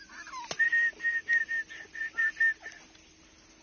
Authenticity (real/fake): real